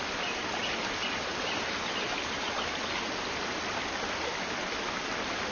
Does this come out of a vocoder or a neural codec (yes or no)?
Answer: no